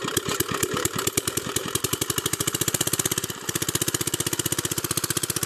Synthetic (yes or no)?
yes